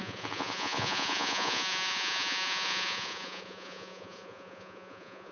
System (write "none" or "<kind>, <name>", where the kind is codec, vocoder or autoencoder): vocoder, Vocos